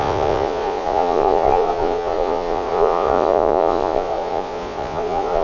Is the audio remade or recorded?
remade